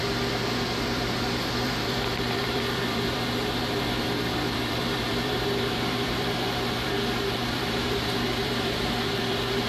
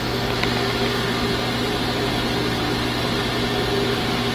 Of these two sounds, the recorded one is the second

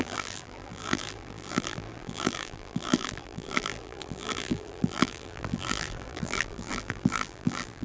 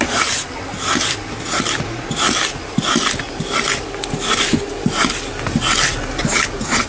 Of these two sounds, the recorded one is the second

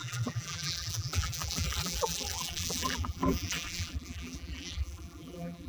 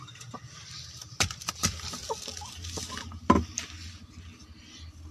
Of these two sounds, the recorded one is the second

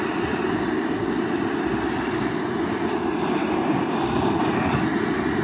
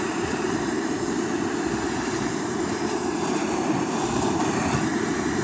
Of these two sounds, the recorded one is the first